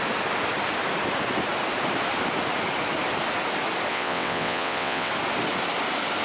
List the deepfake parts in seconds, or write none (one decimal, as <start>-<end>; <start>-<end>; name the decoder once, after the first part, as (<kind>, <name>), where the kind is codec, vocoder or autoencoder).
3.9-5.1 (vocoder, WaveNeXt)